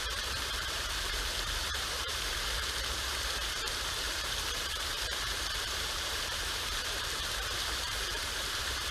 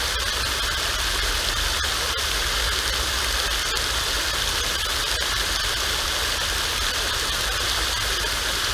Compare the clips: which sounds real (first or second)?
second